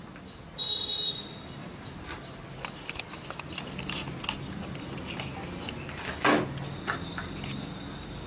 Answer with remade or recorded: recorded